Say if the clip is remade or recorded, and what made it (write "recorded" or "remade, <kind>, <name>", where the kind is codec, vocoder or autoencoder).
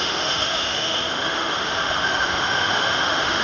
remade, autoencoder, DAC-VAE